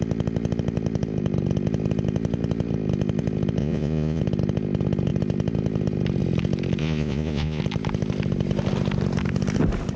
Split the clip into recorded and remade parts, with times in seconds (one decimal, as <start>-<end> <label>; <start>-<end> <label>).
0.0-3.6 recorded; 3.6-4.2 remade; 4.2-6.8 recorded; 6.8-7.6 remade; 7.6-10.0 recorded